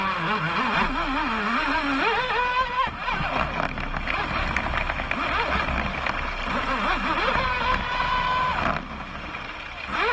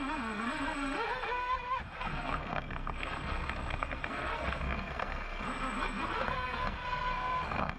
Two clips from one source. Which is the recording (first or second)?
first